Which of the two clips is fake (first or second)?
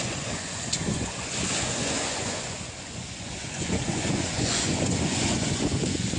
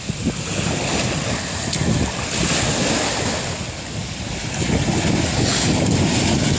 first